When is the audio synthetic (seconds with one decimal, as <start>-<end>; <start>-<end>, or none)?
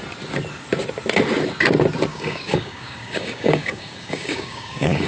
2.1-5.1